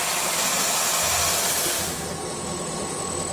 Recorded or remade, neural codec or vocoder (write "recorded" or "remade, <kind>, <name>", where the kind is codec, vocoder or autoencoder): recorded